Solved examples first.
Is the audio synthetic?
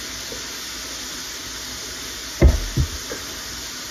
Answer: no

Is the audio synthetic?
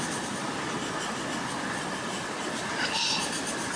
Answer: yes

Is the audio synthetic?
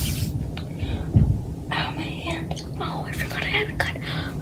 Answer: yes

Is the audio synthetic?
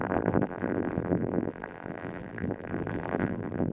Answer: yes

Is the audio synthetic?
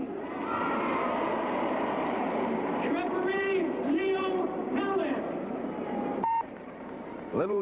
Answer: yes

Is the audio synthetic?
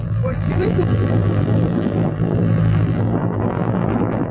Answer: yes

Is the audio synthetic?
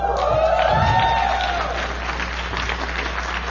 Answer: no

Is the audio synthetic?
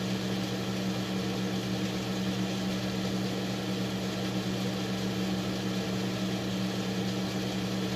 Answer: no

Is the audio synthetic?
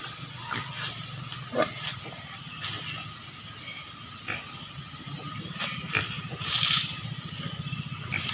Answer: no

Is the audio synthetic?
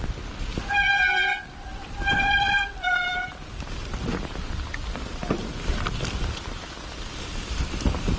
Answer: yes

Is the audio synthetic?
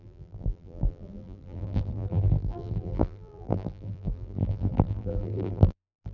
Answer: yes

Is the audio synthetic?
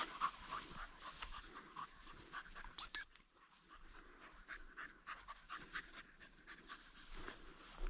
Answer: yes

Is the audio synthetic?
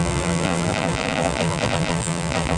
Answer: yes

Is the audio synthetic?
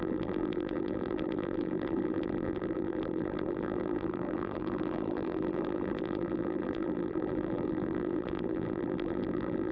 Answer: yes